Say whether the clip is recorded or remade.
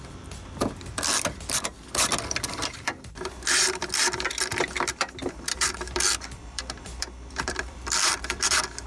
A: remade